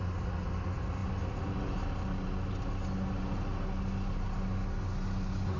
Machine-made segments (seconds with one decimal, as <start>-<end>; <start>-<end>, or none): none